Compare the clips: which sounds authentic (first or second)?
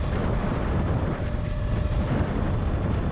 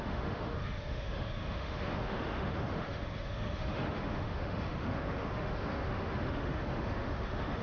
first